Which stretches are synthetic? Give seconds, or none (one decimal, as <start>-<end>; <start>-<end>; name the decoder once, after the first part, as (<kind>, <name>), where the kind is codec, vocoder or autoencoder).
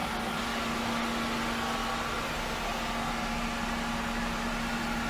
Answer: none